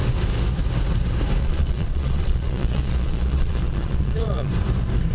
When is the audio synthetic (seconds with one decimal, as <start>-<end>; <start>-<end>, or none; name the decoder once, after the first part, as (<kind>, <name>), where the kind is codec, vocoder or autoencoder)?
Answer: 1.4-4.5 (vocoder, Vocos)